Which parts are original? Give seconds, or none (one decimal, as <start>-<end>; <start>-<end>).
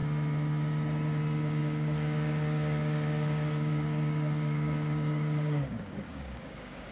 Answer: 0.0-1.6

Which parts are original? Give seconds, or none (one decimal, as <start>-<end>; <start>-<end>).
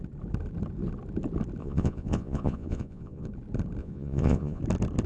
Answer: 0.0-1.6; 3.3-3.8; 4.6-5.1